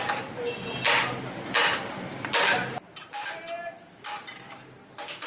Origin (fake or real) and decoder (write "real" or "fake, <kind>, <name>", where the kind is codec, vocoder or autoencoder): real